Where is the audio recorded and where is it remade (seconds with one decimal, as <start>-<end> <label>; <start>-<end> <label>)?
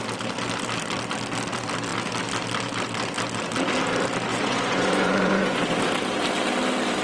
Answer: 0.0-4.3 recorded; 4.3-5.6 remade; 5.6-7.0 recorded